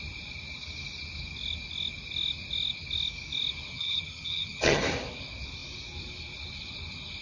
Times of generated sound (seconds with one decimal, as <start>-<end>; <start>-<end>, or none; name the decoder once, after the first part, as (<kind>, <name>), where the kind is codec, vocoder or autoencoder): 3.7-4.8 (vocoder, HiFi-GAN)